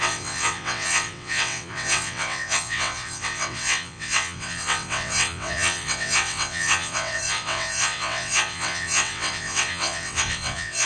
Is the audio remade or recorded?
remade